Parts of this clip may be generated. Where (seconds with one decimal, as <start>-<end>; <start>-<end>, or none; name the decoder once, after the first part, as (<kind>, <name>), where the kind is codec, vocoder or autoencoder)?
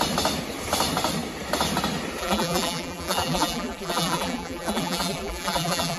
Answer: 2.2-6.0 (vocoder, BigVGAN v2)